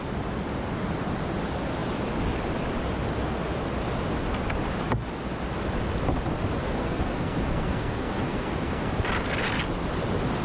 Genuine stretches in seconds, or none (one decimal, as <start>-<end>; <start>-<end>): 0.0-6.6; 8.9-10.4